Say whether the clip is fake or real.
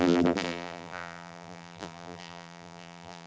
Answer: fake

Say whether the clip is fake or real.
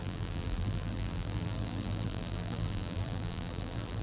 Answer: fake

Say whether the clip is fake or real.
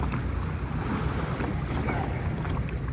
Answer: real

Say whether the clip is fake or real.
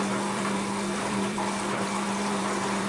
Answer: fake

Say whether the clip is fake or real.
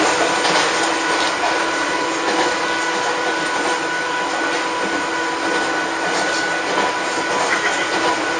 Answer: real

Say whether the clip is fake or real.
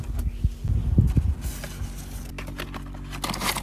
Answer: real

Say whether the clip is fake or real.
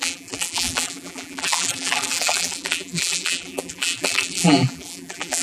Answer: fake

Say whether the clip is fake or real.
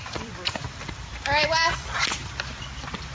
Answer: fake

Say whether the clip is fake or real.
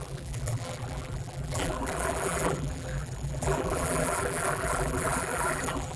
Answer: fake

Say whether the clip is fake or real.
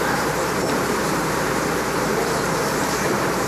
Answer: fake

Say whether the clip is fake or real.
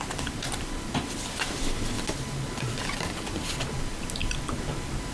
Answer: real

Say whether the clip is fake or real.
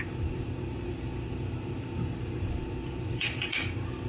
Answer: fake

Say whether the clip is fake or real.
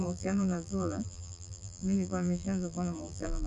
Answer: fake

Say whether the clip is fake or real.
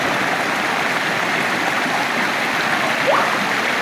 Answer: real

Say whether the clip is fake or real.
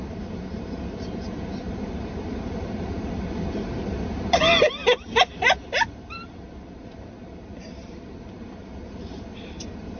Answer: fake